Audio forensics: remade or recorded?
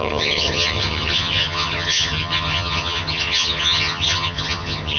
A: remade